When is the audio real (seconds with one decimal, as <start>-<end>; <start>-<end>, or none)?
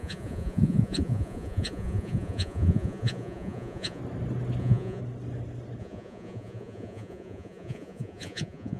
4.0-4.6; 5.0-5.8